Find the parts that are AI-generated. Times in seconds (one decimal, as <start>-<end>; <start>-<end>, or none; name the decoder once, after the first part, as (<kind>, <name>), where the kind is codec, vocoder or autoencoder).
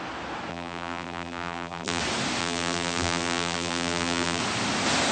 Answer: 0.5-2.0 (vocoder, BigVGAN v2); 2.4-4.4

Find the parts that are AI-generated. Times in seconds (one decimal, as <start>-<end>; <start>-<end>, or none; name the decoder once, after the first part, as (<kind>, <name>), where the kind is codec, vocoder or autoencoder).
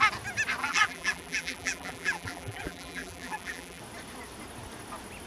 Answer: 0.6-3.8 (vocoder, BigVGAN v2)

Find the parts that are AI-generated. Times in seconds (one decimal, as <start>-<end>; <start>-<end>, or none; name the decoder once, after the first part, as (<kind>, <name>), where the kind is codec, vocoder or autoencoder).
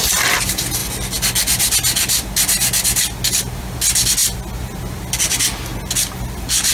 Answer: none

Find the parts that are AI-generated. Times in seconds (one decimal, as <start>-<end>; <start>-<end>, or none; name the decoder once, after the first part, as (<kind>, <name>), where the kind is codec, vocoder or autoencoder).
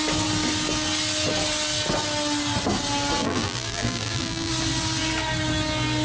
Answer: 3.2-4.5 (vocoder, BigVGAN v2)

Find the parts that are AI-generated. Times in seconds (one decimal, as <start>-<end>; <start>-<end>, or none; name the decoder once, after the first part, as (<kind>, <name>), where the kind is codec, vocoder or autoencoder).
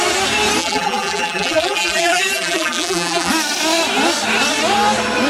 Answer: 0.6-3.3 (vocoder, BigVGAN v2)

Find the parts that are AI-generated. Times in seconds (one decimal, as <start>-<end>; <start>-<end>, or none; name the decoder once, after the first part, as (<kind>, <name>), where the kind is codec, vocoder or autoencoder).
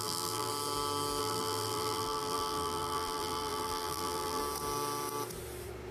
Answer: 0.0-0.5 (vocoder, BigVGAN v2); 1.2-4.4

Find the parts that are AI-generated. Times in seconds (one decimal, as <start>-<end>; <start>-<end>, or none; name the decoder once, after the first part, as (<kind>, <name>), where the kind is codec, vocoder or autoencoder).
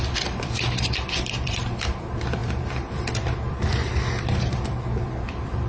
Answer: 0.0-5.7 (vocoder, BigVGAN v2)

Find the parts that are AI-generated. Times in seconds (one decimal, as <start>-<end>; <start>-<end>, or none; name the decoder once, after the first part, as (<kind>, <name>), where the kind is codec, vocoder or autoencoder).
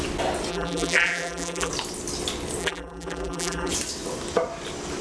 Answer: 0.5-1.7 (vocoder, BigVGAN v2); 2.6-3.7